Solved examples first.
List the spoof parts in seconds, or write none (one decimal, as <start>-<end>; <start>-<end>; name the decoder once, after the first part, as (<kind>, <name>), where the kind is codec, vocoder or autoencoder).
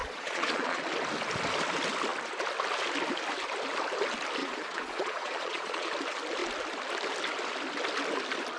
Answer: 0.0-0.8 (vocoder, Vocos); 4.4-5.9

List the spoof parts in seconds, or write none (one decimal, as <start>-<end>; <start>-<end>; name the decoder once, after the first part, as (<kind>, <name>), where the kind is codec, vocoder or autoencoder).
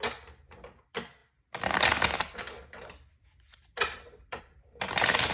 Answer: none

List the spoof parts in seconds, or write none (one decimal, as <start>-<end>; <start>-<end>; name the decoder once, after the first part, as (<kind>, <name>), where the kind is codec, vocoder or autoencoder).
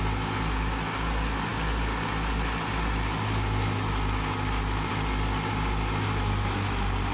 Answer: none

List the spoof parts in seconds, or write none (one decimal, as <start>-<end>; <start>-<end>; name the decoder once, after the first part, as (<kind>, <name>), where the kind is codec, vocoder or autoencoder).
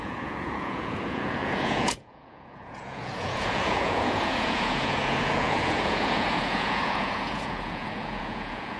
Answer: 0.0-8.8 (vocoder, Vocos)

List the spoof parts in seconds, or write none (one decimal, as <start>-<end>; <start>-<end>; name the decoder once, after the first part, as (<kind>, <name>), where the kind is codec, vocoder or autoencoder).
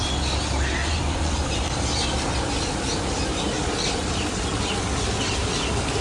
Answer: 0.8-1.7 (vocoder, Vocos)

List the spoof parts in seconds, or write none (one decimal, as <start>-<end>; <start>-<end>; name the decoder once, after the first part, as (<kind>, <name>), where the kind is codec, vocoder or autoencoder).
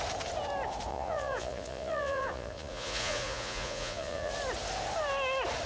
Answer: 0.9-4.3 (vocoder, Vocos)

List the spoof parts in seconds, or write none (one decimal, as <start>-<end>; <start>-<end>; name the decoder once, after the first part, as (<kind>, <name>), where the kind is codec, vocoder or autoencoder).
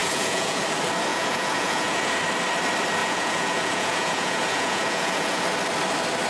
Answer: 0.0-0.6 (vocoder, Vocos); 1.1-2.2; 3.0-5.4